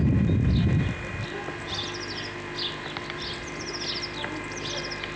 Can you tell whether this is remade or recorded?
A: recorded